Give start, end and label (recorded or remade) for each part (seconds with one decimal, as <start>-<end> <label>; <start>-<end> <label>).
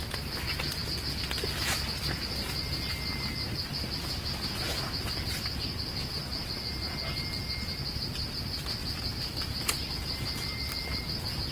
0.0-8.8 recorded; 8.8-11.0 remade; 11.0-11.5 recorded